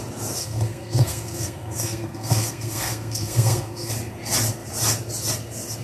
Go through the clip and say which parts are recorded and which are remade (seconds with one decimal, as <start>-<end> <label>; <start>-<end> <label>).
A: 0.0-0.4 recorded; 0.4-3.9 remade; 3.9-5.8 recorded